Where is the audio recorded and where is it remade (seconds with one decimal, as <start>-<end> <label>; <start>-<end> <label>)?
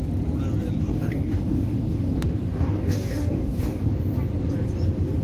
0.0-0.8 recorded; 0.8-3.9 remade; 3.9-5.2 recorded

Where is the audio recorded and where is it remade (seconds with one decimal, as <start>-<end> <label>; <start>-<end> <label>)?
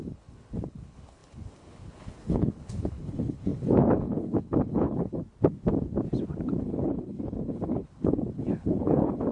0.0-5.2 remade; 5.2-6.6 recorded; 6.6-9.3 remade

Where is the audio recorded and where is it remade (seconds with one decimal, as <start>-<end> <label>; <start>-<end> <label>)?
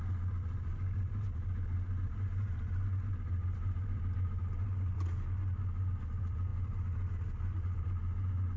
0.0-0.7 recorded; 0.7-4.9 remade; 4.9-8.6 recorded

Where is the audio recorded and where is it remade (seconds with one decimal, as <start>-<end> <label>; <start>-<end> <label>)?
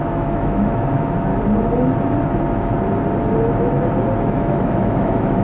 0.0-1.3 remade; 1.3-4.2 recorded; 4.2-5.4 remade